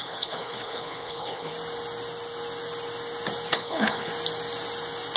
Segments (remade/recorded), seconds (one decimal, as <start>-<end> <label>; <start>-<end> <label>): 0.0-1.5 remade; 1.5-3.5 recorded; 3.5-4.1 remade; 4.1-5.2 recorded

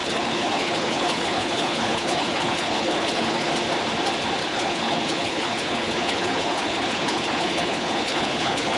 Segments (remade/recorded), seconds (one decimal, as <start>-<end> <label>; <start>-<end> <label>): 0.0-3.5 remade; 3.5-4.4 recorded; 4.4-8.8 remade

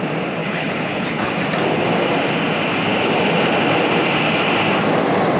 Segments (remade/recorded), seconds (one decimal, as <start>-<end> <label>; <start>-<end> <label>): 0.0-0.4 recorded; 0.4-1.3 remade; 1.3-5.4 recorded

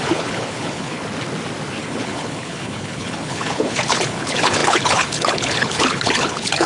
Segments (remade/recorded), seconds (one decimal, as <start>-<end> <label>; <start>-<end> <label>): 0.0-1.0 remade; 1.0-1.8 recorded; 1.8-6.7 remade

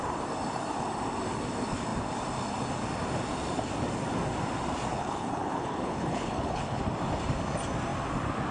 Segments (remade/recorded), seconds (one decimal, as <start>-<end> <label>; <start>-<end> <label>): 0.0-4.9 recorded; 4.9-6.8 remade; 6.8-8.5 recorded

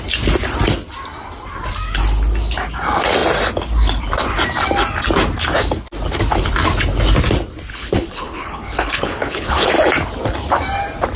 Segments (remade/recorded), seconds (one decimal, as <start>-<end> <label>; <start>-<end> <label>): 0.0-7.7 recorded; 7.7-9.7 remade; 9.7-11.2 recorded